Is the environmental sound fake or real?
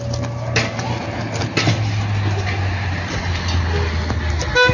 real